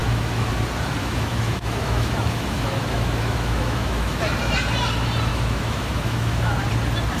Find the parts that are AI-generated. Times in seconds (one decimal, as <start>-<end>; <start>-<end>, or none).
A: 0.0-0.5; 1.0-4.2; 5.3-6.7